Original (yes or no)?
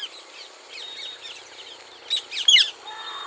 yes